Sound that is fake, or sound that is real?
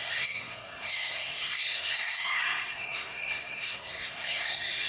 fake